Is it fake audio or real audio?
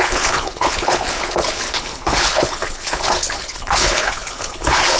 fake